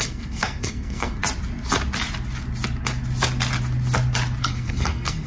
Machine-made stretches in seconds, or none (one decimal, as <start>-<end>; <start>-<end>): 0.0-1.2; 4.4-5.3